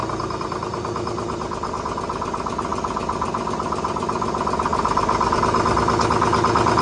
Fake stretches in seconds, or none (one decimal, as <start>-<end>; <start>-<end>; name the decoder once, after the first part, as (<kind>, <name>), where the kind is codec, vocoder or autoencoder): none